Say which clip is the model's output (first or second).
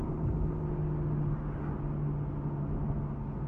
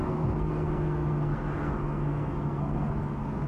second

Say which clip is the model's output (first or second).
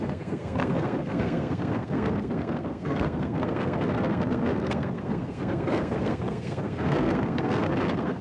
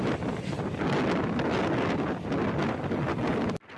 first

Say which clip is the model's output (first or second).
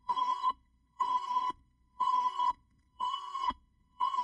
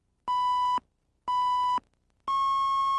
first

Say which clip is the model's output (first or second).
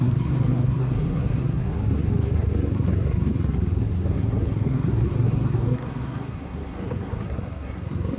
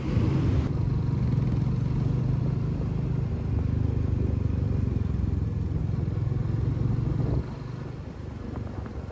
first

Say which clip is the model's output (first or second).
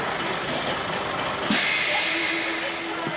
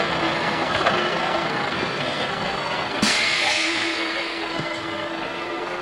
second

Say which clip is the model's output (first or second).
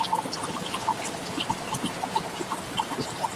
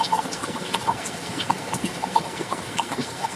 second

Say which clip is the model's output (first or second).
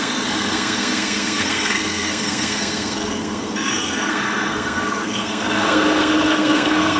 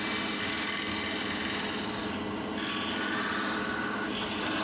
first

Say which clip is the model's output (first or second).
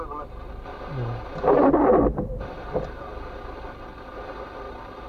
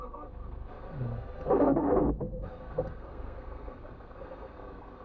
second